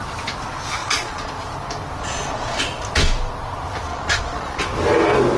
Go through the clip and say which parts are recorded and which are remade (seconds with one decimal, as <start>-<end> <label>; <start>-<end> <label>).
0.0-0.8 recorded; 0.8-1.3 remade; 1.3-2.0 recorded; 2.0-2.6 remade; 2.6-3.9 recorded; 3.9-4.6 remade; 4.6-5.4 recorded